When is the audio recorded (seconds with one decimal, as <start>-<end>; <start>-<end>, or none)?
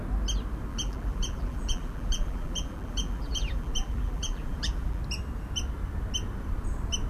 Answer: 0.0-0.7; 5.0-7.1